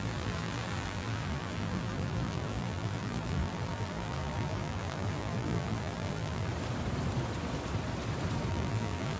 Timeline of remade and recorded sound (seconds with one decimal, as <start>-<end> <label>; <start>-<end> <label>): 0.0-6.5 remade; 6.5-8.5 recorded; 8.5-9.2 remade